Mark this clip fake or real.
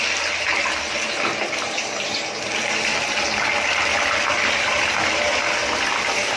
real